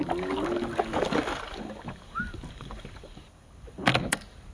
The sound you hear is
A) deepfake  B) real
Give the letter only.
A